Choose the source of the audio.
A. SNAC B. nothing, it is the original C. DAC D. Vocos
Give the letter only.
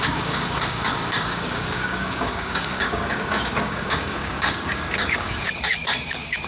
C